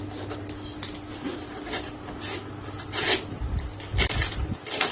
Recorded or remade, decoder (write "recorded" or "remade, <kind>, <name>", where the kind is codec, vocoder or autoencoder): recorded